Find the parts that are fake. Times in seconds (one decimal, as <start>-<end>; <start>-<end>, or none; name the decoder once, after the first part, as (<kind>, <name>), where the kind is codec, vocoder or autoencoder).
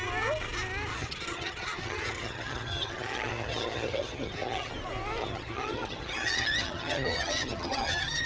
0.9-4.7 (vocoder, HiFi-GAN); 5.2-8.3